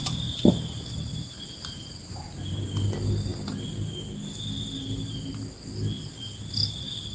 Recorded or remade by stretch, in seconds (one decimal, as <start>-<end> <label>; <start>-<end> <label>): 0.0-2.7 remade; 2.7-7.1 recorded